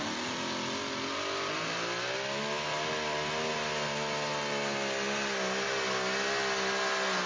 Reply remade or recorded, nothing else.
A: recorded